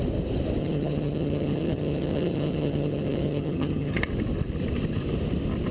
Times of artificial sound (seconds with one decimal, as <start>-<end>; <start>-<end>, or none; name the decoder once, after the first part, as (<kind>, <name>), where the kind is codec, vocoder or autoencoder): 0.6-4.0 (vocoder, HiFi-GAN)

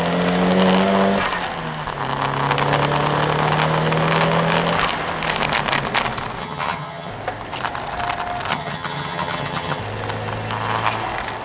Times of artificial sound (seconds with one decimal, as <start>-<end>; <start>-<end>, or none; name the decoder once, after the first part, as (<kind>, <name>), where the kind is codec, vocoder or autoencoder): 6.4-7.1 (vocoder, HiFi-GAN); 8.5-9.8

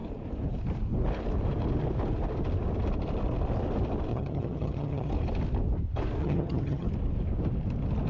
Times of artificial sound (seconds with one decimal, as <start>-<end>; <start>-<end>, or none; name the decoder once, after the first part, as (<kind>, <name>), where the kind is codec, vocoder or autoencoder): 4.1-5.1 (vocoder, HiFi-GAN); 6.2-6.9

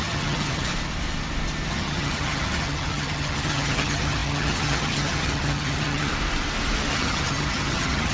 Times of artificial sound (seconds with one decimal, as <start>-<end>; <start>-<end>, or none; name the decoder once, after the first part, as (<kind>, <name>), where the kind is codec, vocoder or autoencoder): 0.0-0.7 (vocoder, HiFi-GAN); 1.7-6.1; 6.9-8.1

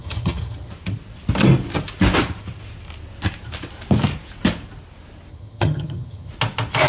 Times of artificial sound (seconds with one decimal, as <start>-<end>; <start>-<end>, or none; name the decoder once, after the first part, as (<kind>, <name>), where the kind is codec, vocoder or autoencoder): 0.0-0.7 (vocoder, HiFi-GAN); 5.3-6.3

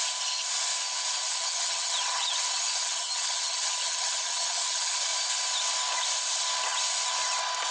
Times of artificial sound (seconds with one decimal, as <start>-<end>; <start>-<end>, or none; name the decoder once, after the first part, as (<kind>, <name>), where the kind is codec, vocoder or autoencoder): 1.3-5.0 (vocoder, HiFi-GAN)

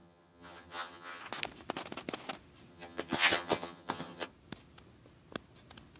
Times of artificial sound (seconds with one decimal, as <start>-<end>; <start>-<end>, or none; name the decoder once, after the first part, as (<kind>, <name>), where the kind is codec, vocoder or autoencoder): 0.0-1.2 (vocoder, HiFi-GAN); 2.7-4.3